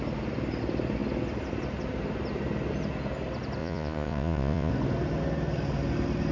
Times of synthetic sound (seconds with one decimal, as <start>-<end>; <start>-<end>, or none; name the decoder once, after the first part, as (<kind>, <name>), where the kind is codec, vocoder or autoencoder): 3.6-4.7 (vocoder, Vocos)